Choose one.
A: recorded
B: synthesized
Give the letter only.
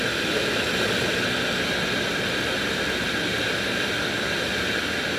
A